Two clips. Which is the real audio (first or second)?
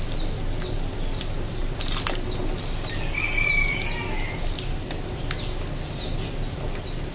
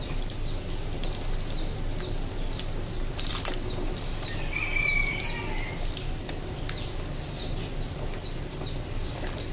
first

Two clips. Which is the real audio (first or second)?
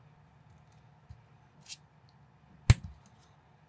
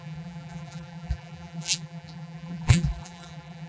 first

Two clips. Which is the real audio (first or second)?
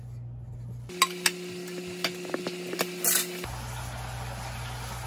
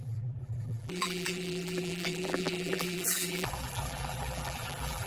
first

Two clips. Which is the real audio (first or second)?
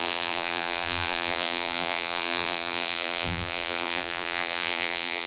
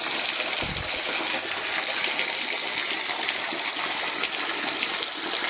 second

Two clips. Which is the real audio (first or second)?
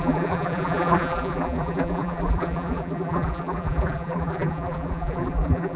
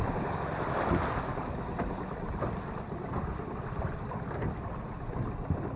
second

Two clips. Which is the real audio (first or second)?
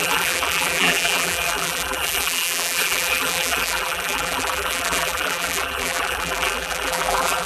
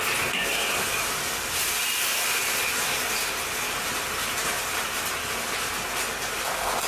second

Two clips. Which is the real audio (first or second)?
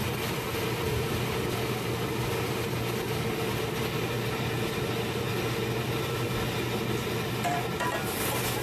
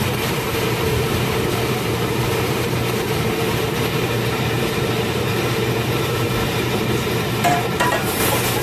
first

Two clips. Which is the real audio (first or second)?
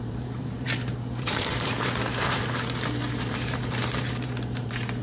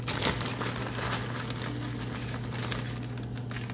second